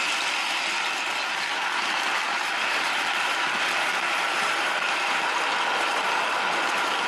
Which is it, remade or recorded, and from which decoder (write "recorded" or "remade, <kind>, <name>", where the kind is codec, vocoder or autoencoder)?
recorded